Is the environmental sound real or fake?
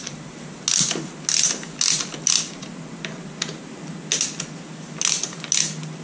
real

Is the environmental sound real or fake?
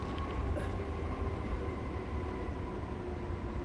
real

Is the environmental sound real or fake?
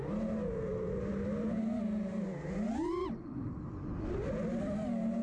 real